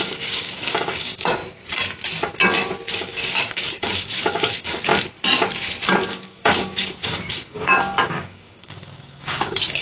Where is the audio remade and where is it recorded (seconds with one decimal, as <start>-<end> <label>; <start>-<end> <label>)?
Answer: 0.0-1.4 remade; 1.4-2.9 recorded; 2.9-4.9 remade; 4.9-6.0 recorded; 6.0-9.8 remade